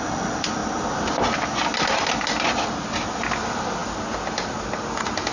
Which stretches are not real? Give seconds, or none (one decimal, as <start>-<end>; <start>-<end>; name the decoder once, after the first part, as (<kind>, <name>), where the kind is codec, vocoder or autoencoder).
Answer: none